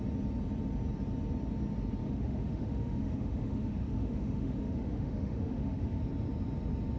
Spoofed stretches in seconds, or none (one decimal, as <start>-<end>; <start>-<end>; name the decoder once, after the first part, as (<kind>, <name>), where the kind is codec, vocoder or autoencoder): 2.0-6.0 (autoencoder, DAC-VAE)